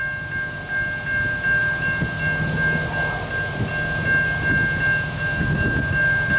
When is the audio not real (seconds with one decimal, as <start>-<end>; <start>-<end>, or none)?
none